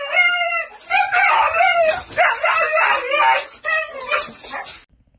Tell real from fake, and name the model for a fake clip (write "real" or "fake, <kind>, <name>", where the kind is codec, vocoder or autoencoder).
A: real